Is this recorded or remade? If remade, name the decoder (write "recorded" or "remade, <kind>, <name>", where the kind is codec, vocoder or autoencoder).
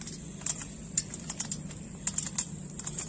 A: recorded